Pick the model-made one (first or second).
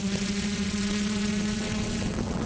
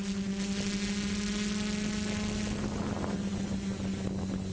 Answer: first